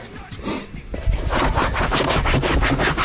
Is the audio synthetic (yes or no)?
no